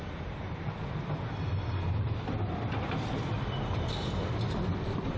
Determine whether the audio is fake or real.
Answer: real